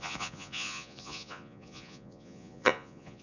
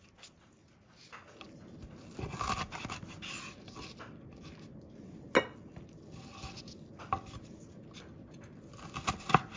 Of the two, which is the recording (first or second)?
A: second